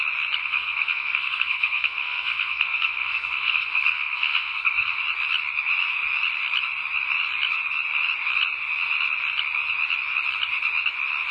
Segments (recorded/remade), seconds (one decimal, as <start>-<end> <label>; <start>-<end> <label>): 0.0-0.4 recorded; 0.4-5.0 remade; 5.0-11.3 recorded